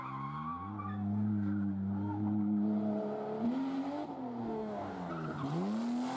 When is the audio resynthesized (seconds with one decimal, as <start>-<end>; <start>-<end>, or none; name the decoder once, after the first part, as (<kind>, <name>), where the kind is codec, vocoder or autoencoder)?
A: 4.4-5.1 (codec, DAC)